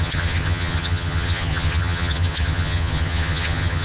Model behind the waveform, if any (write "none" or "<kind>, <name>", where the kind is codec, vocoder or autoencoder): vocoder, HiFi-GAN